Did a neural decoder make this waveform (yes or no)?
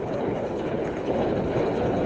yes